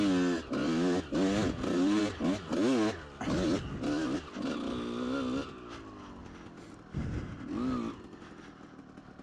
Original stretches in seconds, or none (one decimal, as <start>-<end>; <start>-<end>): 0.0-0.6; 2.0-9.2